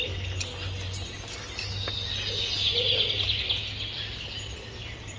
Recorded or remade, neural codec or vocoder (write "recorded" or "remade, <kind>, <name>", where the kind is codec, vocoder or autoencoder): recorded